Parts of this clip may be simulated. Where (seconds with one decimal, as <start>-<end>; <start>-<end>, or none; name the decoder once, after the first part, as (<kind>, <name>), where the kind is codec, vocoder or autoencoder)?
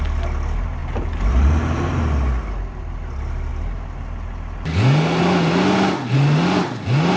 0.8-2.0 (vocoder, BigVGAN v2)